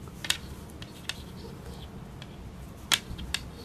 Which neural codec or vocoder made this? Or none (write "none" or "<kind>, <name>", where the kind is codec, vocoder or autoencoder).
none